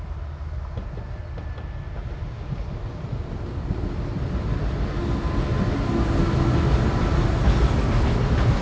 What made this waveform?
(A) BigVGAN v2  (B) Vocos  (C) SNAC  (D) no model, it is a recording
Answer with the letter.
D